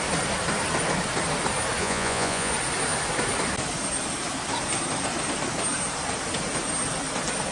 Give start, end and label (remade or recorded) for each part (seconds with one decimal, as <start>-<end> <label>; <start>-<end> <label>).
0.0-1.8 recorded; 1.8-2.5 remade; 2.5-7.5 recorded